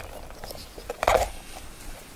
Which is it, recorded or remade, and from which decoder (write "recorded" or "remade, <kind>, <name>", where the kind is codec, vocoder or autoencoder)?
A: recorded